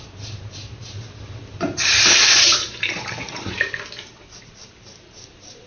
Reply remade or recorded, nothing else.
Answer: remade